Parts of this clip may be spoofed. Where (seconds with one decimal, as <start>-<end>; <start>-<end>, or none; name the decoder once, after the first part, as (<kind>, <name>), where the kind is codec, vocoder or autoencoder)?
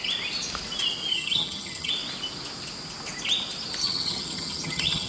1.1-1.9 (vocoder, HiFi-GAN); 3.8-5.1